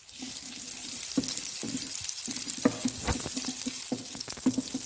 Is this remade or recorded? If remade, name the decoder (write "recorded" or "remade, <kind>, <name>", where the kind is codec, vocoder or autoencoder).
recorded